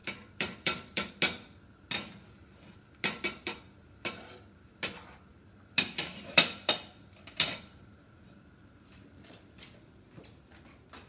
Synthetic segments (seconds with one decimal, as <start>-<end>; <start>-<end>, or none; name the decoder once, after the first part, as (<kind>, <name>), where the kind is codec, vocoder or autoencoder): 0.0-1.1 (vocoder, BigVGAN v2)